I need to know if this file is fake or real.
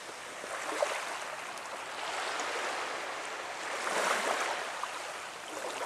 real